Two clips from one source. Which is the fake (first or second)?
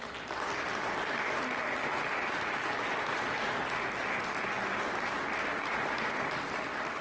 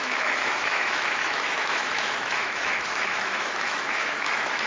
second